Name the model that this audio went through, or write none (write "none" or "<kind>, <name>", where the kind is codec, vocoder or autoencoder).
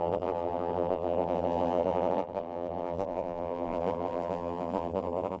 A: vocoder, BigVGAN v2